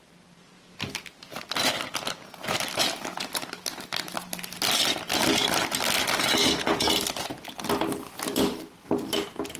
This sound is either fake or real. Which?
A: real